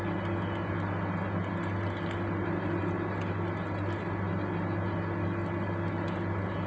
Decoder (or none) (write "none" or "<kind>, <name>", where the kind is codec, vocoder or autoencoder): none